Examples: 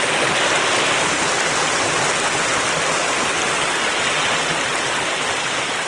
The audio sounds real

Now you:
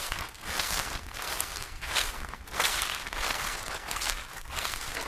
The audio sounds fake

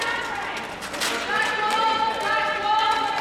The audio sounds real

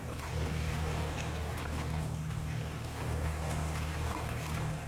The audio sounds fake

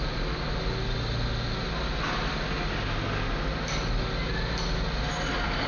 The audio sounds real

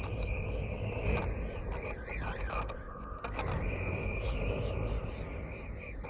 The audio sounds real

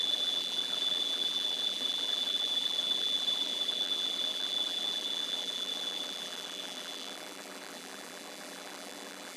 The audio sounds fake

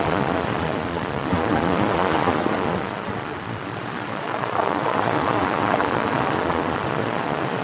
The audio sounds fake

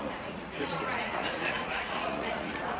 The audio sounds fake